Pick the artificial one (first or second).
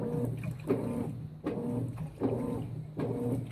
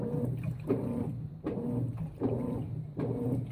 second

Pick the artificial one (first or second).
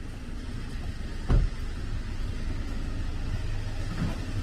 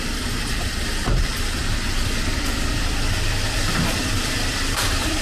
second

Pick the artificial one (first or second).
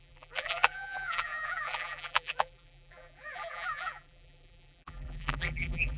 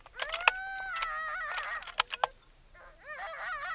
first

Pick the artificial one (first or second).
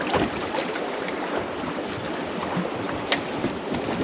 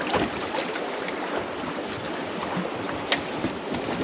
first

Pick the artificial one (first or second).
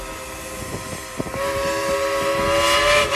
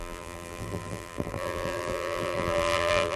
second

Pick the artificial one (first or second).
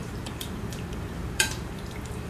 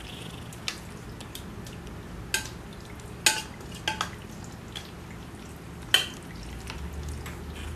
first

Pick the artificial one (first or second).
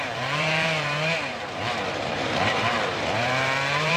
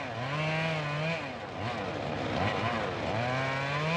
first